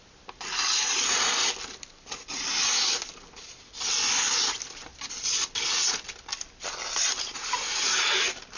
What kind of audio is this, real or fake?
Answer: real